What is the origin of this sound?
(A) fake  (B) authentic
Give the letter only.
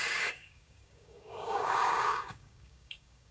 A